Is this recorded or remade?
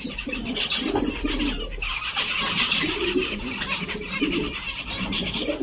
remade